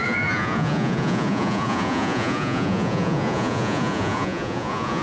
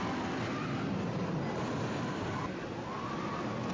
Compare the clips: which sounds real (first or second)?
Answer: second